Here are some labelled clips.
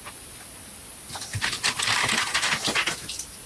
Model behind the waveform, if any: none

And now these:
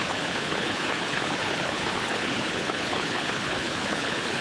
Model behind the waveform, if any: codec, HILCodec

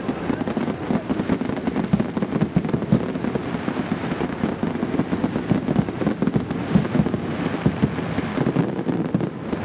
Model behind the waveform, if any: none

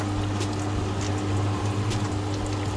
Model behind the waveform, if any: none